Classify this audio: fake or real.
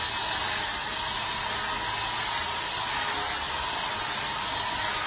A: real